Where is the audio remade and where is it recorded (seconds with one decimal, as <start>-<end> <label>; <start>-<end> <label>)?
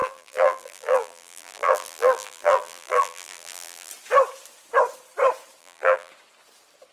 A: 0.0-3.9 remade; 3.9-5.6 recorded; 5.6-6.1 remade; 6.1-6.9 recorded